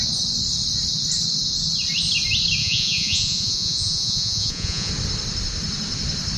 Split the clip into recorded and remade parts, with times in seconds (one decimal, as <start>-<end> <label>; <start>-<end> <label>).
0.0-2.6 recorded; 2.6-4.9 remade; 4.9-6.4 recorded